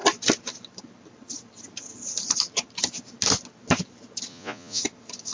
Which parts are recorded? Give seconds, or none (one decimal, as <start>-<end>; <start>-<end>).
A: 0.0-4.3; 4.8-5.3

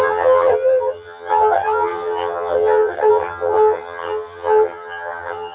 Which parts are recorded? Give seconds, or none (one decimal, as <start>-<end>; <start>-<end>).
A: none

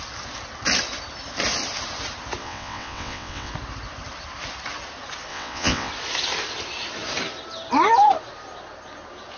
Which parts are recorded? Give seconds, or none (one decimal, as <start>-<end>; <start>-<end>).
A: 0.0-2.4; 3.5-5.3; 5.9-9.4

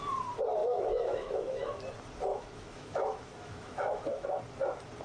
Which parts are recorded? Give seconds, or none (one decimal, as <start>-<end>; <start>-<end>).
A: 0.0-0.6; 1.8-2.3; 4.4-5.0

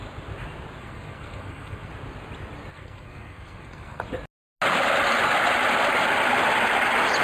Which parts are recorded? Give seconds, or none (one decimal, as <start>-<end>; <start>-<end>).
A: 0.0-0.8; 1.9-2.7; 4.0-7.2

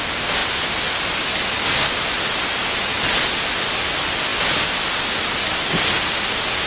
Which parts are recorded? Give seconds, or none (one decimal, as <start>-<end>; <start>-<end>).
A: 0.0-6.7

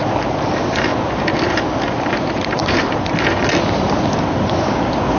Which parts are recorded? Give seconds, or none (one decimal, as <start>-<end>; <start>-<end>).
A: 0.0-5.2